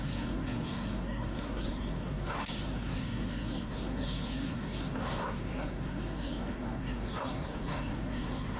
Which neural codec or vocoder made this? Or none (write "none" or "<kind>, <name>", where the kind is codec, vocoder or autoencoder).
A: codec, SNAC